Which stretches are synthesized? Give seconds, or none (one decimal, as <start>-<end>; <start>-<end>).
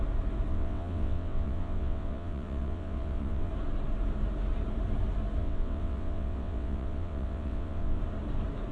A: 0.5-3.5; 5.4-8.0